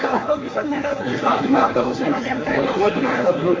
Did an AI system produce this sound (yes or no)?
yes